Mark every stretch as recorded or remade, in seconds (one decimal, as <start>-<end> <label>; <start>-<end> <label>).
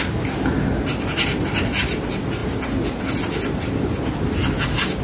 0.0-5.0 recorded